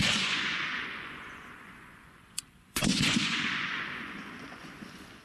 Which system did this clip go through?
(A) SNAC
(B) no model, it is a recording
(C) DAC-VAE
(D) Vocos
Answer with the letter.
D